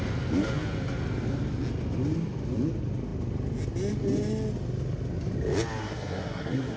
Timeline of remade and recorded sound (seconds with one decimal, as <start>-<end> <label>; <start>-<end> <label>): 0.0-5.8 recorded; 5.8-6.8 remade